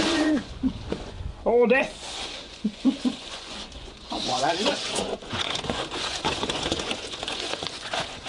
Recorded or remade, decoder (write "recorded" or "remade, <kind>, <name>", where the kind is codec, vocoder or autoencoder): remade, vocoder, Vocos